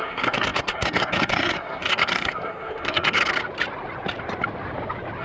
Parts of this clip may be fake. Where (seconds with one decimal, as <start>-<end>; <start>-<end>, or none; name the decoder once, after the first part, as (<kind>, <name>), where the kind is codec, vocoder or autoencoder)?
0.0-3.2 (codec, SNAC)